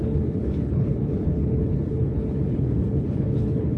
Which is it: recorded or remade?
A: remade